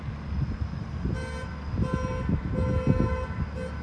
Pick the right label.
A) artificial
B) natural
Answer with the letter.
B